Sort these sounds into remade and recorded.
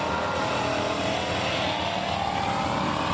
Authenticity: recorded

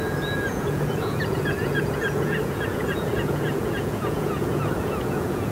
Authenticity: remade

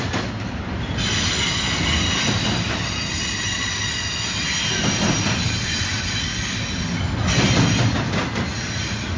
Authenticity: recorded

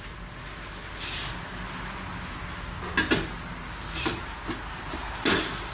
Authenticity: recorded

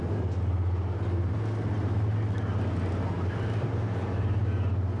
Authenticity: recorded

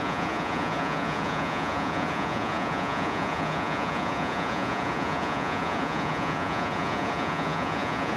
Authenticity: remade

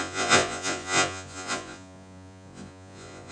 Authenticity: remade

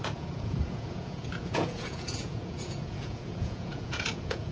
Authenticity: remade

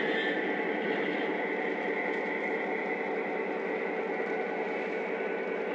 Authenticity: recorded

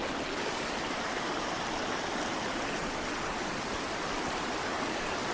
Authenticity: recorded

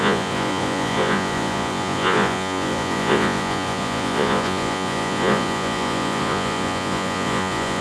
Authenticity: remade